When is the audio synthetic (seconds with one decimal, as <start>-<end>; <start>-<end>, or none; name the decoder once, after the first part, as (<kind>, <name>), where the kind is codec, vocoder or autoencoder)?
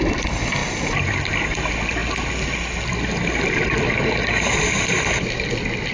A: 0.6-1.3 (vocoder, BigVGAN v2)